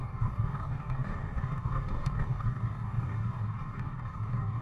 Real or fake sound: fake